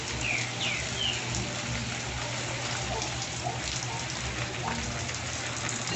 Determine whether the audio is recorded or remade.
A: recorded